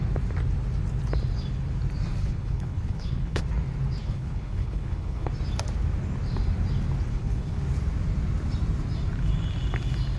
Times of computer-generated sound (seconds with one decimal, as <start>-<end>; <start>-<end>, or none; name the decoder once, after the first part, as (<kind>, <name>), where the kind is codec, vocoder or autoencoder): 2.2-3.4 (codec, HILCodec); 4.0-5.3; 7.1-7.6